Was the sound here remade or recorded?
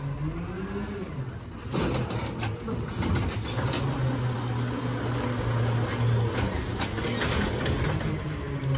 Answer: recorded